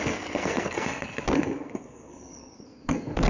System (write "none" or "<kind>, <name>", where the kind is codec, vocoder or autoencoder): codec, SNAC